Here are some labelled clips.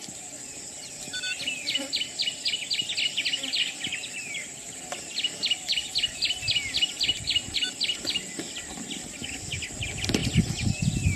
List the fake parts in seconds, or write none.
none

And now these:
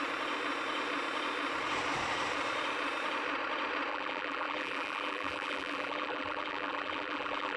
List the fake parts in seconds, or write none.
3.9-7.6 (vocoder, BigVGAN v2)

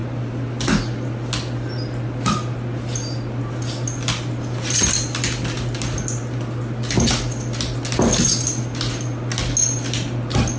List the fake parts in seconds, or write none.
none

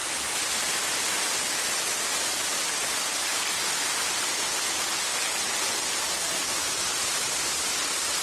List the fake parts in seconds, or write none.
2.8-3.3 (vocoder, BigVGAN v2); 4.2-5.1; 6.5-8.2

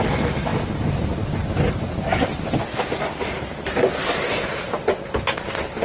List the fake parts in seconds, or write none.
0.5-4.0 (vocoder, BigVGAN v2)

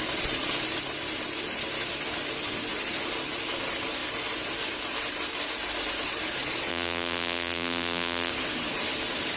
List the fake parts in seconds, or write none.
6.7-8.3 (vocoder, BigVGAN v2)

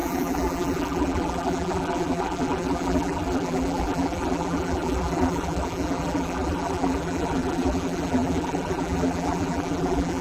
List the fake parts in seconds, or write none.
0.0-10.2 (vocoder, BigVGAN v2)

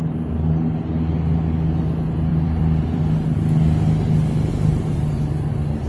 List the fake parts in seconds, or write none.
2.3-3.0 (vocoder, BigVGAN v2); 4.5-5.1